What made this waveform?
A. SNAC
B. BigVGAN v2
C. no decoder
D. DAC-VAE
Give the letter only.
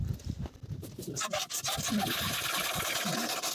C